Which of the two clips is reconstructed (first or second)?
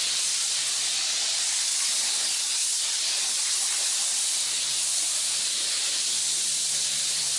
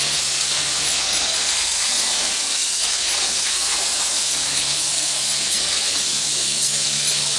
second